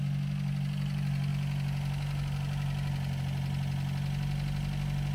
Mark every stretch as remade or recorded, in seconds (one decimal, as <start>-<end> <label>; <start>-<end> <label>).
0.0-5.1 recorded